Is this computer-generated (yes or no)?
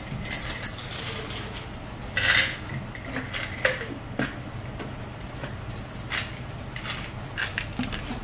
no